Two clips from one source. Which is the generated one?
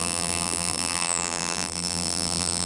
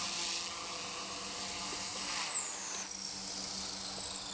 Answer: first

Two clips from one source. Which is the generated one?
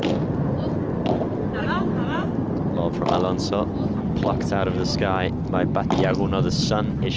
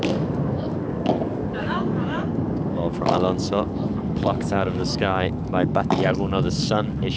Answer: second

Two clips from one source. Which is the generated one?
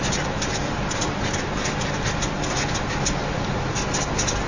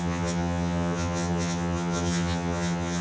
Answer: second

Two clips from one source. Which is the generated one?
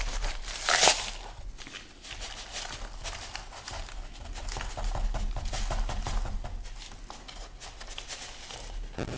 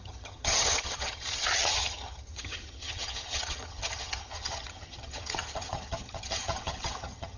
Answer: second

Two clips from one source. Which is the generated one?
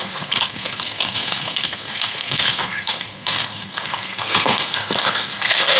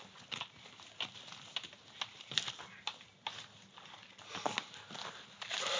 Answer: first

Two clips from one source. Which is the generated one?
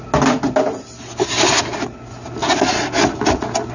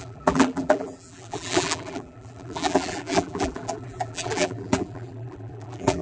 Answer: second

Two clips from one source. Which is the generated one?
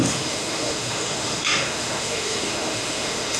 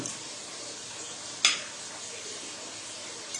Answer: first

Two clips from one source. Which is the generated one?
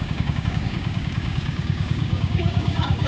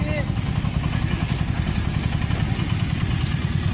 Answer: first